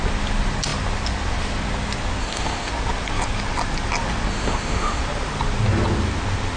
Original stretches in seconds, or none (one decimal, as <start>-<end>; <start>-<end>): 0.0-2.2; 2.7-4.3; 5.0-6.6